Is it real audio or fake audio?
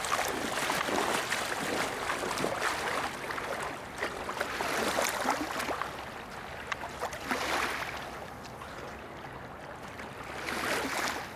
real